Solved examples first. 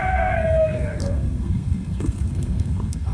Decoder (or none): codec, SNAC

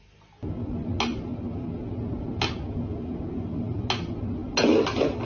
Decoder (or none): none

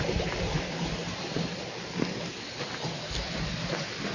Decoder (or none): none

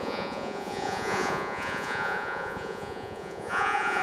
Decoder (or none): vocoder, Vocos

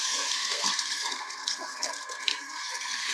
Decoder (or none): codec, SNAC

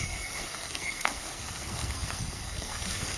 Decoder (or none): codec, SNAC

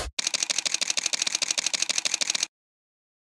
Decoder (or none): none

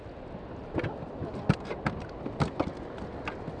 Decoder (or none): none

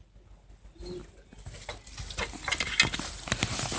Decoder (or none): none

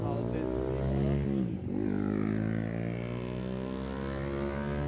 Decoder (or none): none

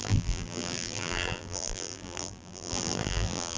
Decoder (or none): vocoder, BigVGAN v2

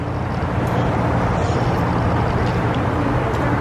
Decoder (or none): vocoder, BigVGAN v2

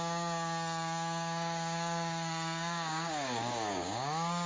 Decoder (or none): codec, DAC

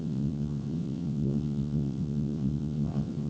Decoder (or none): vocoder, WaveNeXt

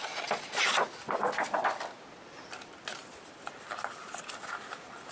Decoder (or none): none